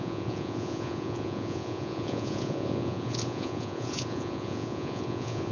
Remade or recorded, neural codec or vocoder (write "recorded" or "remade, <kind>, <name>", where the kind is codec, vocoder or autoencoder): remade, vocoder, Vocos